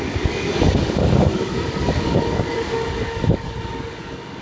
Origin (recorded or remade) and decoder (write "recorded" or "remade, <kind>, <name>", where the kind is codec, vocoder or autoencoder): remade, codec, DAC